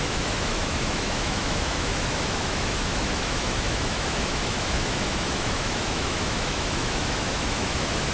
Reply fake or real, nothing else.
fake